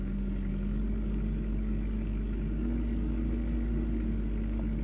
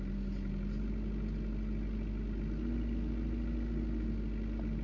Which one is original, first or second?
second